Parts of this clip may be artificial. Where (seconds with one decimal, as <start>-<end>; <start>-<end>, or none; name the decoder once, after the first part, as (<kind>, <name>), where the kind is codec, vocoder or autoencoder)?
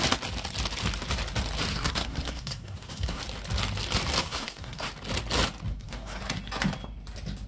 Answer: 1.7-3.2 (codec, SNAC); 4.2-4.9; 5.7-6.2